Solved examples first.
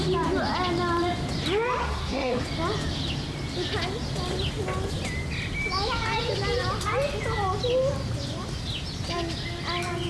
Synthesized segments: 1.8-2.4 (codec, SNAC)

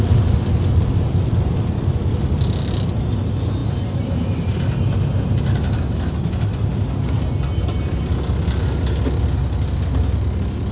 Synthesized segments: none